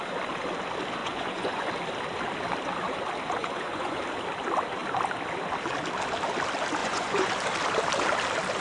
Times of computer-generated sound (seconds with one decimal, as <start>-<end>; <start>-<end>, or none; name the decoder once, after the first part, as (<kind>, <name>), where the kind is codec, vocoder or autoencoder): 1.0-1.7 (vocoder, Vocos); 3.4-4.0; 6.8-7.3